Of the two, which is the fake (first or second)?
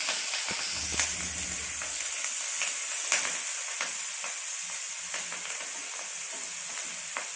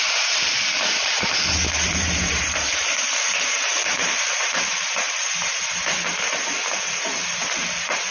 second